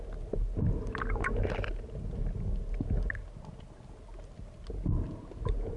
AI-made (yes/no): no